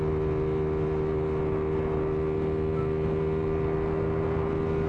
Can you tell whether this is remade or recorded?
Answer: recorded